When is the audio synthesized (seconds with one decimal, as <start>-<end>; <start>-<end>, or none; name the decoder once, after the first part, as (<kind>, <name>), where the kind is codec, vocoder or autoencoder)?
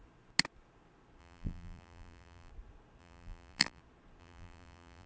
1.2-2.5 (vocoder, BigVGAN v2); 3.0-3.8; 4.2-5.1